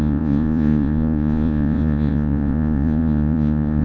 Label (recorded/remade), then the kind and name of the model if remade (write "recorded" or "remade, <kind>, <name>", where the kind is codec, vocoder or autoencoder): remade, vocoder, Vocos